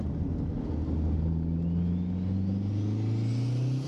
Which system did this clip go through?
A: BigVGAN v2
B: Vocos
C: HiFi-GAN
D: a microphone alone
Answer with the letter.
D